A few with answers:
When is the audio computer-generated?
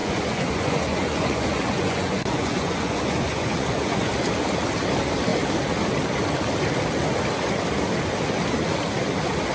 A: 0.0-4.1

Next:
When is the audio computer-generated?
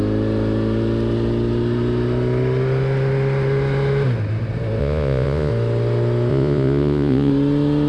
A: 4.8-5.5; 6.3-7.3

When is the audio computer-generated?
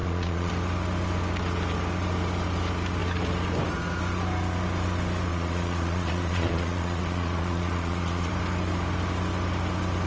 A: 0.0-0.5; 5.3-8.3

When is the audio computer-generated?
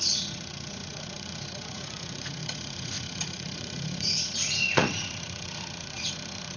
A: 0.0-6.6